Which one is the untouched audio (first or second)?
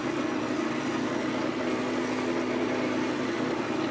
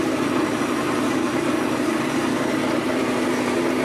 first